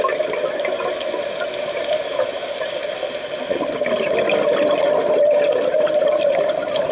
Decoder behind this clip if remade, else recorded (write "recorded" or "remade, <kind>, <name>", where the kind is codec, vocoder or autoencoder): recorded